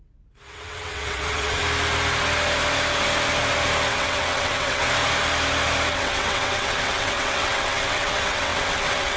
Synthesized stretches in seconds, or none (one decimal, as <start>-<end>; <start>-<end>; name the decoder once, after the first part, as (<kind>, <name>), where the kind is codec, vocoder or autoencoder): 0.0-1.6 (vocoder, WaveNeXt); 3.9-4.8; 5.9-9.2